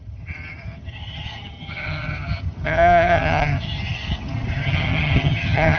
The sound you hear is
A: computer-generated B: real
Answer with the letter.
A